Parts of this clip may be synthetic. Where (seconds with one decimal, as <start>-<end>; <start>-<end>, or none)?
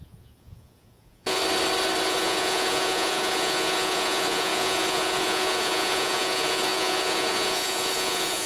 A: 0.0-1.4; 2.1-8.5